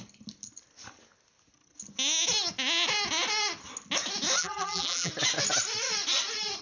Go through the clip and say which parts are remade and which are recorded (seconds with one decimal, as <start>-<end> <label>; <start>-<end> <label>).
0.0-4.4 recorded; 4.4-5.1 remade; 5.1-6.6 recorded